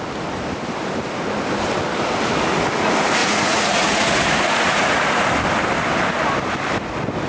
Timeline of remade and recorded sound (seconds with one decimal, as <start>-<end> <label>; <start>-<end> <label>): 0.0-3.2 recorded; 3.2-5.2 remade; 5.2-7.3 recorded